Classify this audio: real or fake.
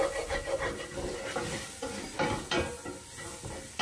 real